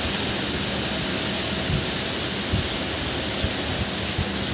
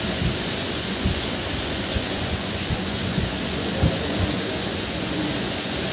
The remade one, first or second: second